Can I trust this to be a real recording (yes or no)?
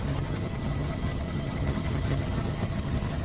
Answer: no